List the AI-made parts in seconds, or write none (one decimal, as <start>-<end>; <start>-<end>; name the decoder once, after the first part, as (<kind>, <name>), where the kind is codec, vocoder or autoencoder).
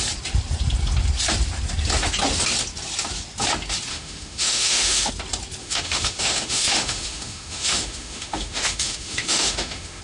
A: 3.9-5.1 (autoencoder, DAC-VAE); 5.6-10.0